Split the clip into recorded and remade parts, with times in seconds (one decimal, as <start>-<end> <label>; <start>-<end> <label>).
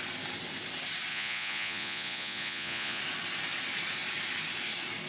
0.0-1.1 recorded; 1.1-3.0 remade; 3.0-5.1 recorded